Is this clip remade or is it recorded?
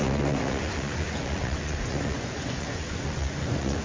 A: remade